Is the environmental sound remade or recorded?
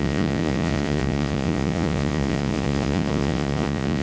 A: remade